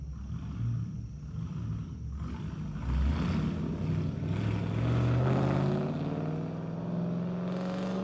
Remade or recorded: recorded